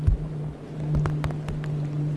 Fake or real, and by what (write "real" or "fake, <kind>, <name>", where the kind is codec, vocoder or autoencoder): real